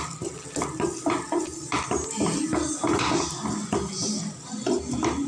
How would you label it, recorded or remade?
recorded